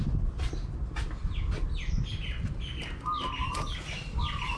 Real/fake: real